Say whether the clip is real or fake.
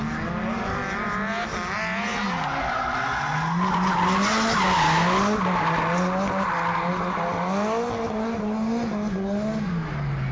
real